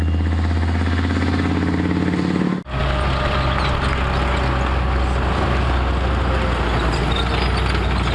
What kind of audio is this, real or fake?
real